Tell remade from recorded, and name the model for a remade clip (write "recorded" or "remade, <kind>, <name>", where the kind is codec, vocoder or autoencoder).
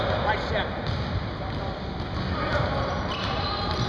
recorded